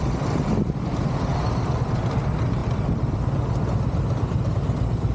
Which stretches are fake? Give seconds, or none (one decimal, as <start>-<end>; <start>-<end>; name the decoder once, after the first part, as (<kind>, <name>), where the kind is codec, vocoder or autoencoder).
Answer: none